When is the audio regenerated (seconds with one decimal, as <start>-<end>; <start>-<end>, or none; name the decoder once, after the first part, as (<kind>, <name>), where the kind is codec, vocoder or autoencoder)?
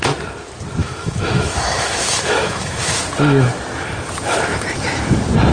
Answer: 0.8-3.0 (autoencoder, DAC-VAE)